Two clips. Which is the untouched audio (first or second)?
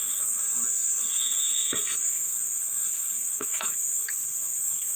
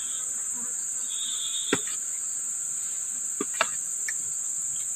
second